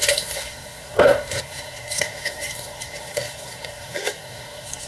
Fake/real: fake